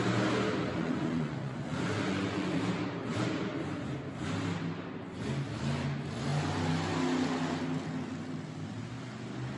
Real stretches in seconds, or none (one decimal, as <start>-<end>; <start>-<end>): 0.0-0.7; 2.6-9.6